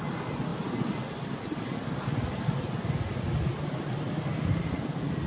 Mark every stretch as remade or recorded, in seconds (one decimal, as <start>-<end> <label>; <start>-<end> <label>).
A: 0.0-5.3 recorded